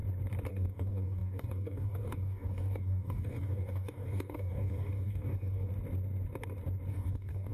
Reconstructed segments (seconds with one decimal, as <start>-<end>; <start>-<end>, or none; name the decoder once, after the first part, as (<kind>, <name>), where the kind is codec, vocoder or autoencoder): 0.5-5.7 (codec, DAC); 6.9-7.5